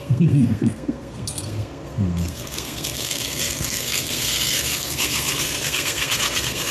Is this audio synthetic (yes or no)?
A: yes